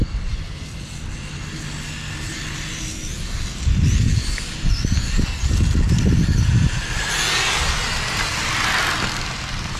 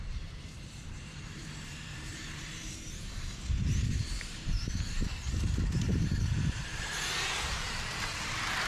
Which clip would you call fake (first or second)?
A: second